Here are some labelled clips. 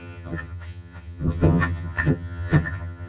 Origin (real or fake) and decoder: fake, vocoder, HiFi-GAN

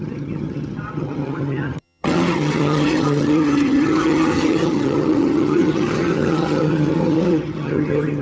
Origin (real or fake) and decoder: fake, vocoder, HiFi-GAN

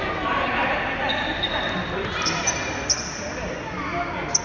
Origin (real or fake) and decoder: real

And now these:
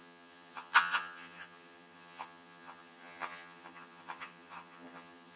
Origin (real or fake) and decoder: fake, vocoder, HiFi-GAN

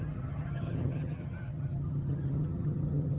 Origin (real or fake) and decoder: fake, vocoder, HiFi-GAN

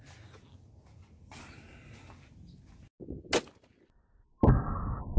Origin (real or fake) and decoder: real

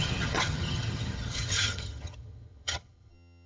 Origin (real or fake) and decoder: fake, vocoder, HiFi-GAN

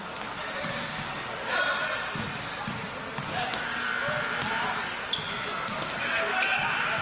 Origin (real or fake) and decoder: real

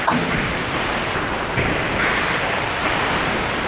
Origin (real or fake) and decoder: real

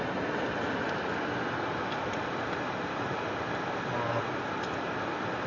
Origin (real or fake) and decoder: real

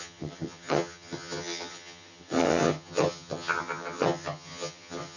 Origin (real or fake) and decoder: fake, vocoder, HiFi-GAN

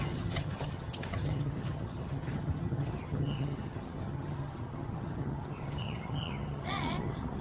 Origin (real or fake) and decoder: fake, vocoder, HiFi-GAN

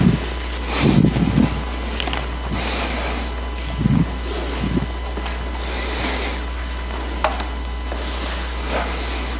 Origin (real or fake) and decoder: real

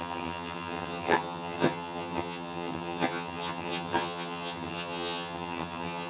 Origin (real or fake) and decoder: fake, vocoder, HiFi-GAN